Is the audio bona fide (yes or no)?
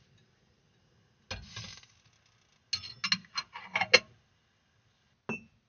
yes